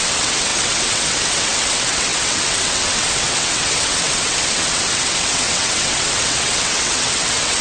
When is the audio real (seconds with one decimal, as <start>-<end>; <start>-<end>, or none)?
none